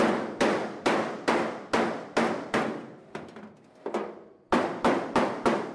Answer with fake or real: real